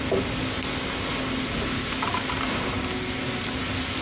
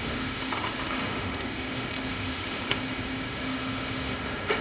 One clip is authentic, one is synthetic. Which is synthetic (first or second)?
second